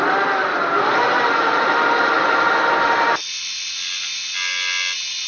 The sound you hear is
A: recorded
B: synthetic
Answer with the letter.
A